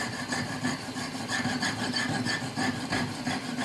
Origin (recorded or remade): recorded